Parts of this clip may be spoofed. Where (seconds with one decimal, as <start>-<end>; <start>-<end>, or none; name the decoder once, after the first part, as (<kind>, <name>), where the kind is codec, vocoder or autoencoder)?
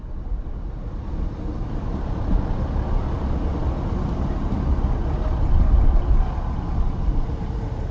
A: none